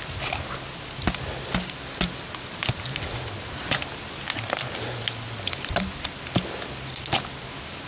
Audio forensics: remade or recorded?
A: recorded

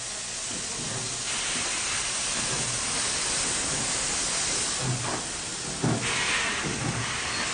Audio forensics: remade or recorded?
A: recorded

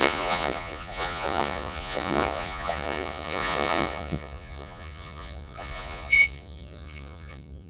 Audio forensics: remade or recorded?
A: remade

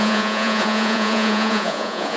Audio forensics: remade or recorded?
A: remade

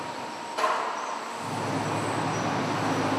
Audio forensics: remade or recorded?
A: recorded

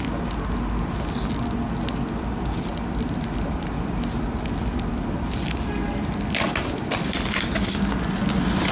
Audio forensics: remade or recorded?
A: recorded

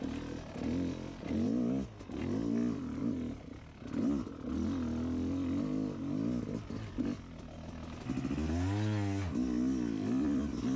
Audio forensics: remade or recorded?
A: recorded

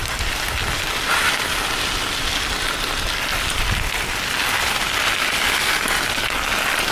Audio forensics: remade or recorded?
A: recorded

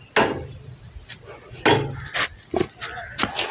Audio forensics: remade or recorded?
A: recorded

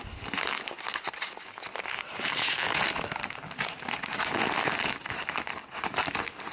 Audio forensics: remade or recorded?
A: recorded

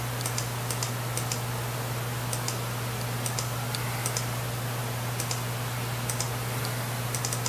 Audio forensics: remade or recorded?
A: recorded